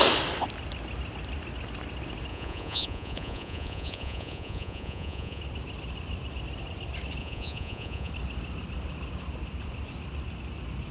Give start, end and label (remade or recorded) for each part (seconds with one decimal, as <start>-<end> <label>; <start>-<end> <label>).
0.0-2.3 recorded; 2.3-5.4 remade; 5.4-7.2 recorded; 7.2-8.1 remade; 8.1-10.9 recorded